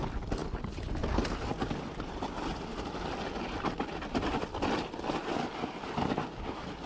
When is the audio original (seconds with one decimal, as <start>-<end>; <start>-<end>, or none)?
0.0-2.7; 3.2-6.9